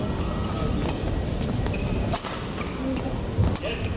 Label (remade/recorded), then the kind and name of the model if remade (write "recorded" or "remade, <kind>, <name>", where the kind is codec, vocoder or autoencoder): recorded